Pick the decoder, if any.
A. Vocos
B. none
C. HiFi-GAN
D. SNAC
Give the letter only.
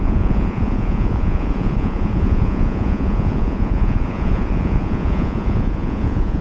A